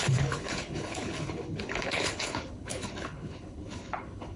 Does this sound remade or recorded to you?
remade